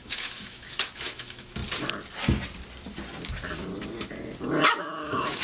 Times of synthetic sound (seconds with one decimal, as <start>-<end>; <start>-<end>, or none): 0.0-1.6; 4.8-5.4